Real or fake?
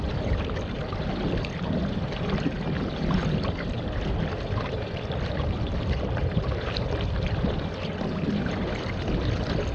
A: fake